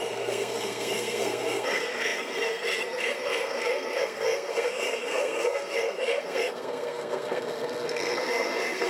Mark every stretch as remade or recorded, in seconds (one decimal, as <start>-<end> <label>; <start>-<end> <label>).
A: 0.0-8.9 remade